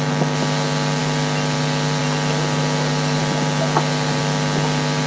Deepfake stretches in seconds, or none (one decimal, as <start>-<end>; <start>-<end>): none